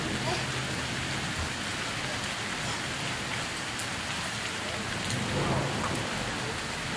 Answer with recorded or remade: recorded